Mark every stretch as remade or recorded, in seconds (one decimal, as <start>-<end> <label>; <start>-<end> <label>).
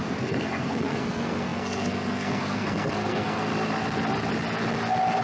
0.0-3.5 remade; 3.5-5.2 recorded